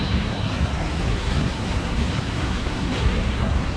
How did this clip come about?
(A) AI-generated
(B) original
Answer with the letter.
A